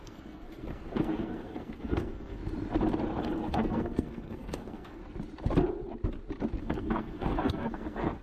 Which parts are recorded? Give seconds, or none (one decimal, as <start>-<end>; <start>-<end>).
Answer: 2.4-3.2; 5.0-6.6